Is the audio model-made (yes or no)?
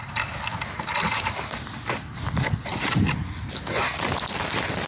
no